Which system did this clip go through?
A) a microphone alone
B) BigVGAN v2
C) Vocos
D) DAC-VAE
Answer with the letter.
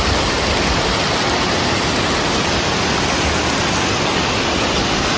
A